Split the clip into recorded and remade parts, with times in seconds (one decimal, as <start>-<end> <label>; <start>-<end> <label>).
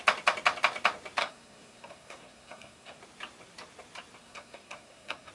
0.0-1.2 recorded; 1.2-3.0 remade; 3.0-4.2 recorded; 4.2-5.3 remade